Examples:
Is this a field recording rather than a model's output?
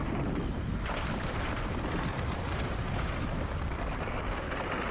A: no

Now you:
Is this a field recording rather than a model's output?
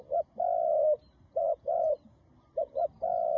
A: yes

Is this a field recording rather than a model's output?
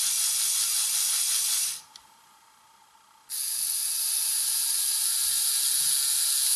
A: yes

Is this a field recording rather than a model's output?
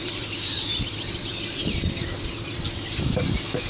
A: no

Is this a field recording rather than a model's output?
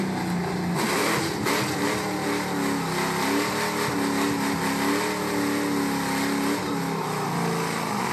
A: yes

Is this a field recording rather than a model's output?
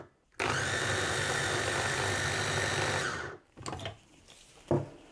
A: yes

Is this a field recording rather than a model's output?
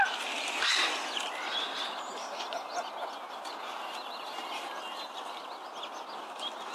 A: yes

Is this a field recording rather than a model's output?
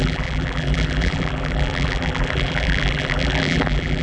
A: no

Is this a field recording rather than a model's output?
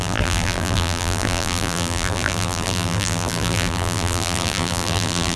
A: no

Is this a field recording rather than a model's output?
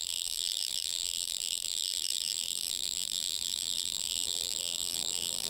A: no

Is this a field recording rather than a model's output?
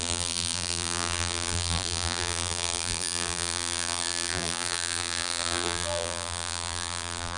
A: no